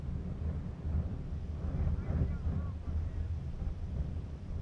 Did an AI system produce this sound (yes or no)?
yes